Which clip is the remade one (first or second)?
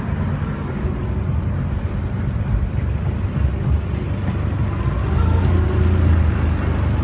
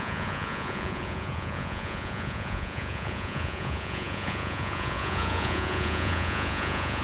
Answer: second